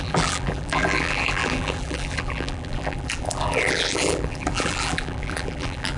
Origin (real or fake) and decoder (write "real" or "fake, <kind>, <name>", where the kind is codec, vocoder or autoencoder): fake, vocoder, BigVGAN v2